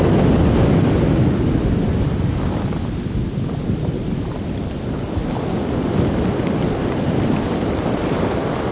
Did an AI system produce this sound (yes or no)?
no